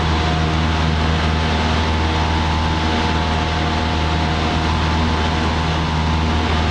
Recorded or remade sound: recorded